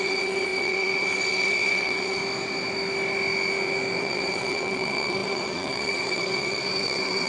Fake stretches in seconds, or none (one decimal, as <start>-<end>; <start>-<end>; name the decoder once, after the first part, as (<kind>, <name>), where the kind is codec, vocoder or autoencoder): 0.0-2.2 (vocoder, WaveNeXt); 4.0-7.3